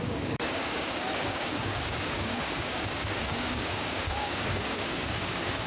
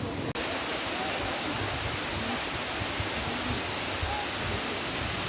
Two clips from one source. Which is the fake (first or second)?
first